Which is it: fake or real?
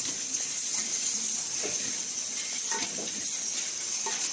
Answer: real